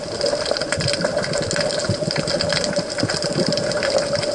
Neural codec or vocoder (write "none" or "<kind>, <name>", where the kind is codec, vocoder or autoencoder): none